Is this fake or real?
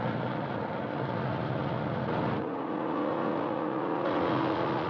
fake